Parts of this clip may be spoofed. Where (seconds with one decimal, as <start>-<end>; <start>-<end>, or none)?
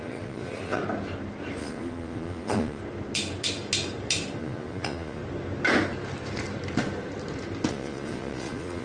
0.0-0.8; 1.6-2.8; 4.4-5.2; 7.7-8.8